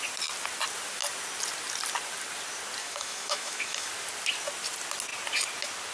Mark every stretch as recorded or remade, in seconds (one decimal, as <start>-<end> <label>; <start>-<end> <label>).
0.0-2.8 recorded; 2.8-3.9 remade; 3.9-5.9 recorded